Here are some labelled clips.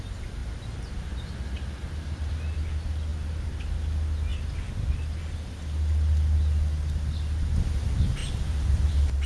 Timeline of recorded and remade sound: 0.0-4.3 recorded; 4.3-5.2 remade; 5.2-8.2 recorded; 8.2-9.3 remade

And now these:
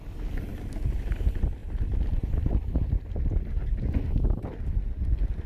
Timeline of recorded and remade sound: 0.0-5.5 recorded

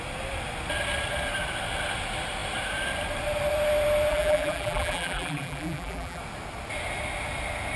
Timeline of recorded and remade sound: 0.0-4.1 recorded; 4.1-6.2 remade; 6.2-7.8 recorded

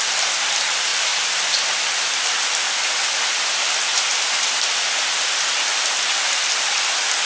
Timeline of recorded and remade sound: 0.0-0.9 recorded; 0.9-4.6 remade; 4.6-7.3 recorded

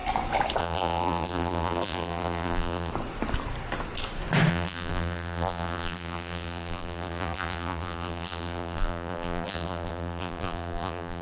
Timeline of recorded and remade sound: 0.0-0.6 recorded; 0.6-2.9 remade; 2.9-4.5 recorded; 4.5-11.2 remade

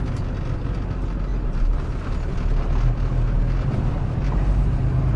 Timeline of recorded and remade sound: 0.0-5.2 recorded

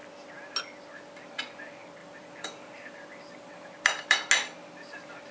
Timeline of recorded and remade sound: 0.0-2.0 recorded; 2.0-3.7 remade; 3.7-5.3 recorded